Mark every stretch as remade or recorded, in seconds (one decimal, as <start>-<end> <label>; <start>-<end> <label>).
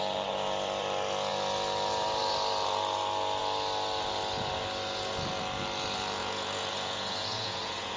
0.0-6.2 recorded; 6.2-8.0 remade